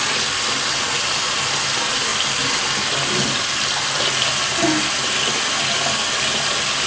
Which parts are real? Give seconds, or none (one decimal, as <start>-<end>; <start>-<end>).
0.0-6.9